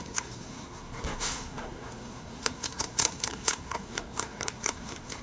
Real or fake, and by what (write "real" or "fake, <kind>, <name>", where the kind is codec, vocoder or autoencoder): fake, codec, SNAC